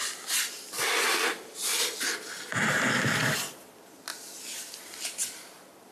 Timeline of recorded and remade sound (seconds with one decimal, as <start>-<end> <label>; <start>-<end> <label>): 0.0-5.9 recorded